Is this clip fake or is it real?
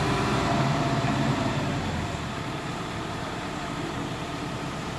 fake